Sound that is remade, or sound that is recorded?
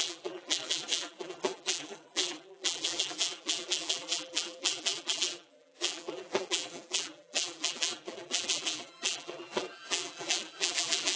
remade